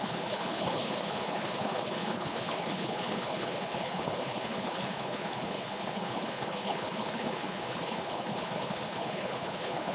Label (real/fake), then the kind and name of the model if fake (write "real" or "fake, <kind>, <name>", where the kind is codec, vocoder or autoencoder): fake, codec, HILCodec